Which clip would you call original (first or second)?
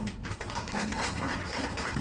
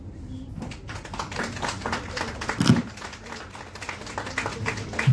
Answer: second